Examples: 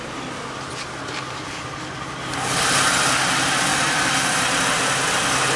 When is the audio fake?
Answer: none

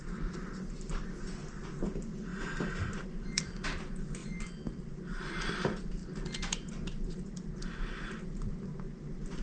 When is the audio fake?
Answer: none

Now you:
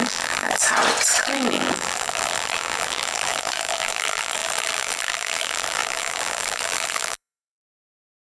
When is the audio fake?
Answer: 0.0-0.6 (vocoder, BigVGAN v2); 1.2-8.2